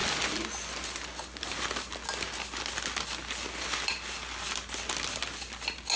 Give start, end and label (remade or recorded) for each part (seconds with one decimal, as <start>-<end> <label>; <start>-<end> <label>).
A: 0.0-6.0 recorded